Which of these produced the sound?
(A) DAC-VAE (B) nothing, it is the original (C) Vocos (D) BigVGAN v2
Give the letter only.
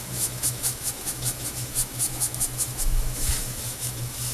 A